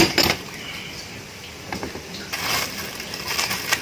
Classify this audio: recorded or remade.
recorded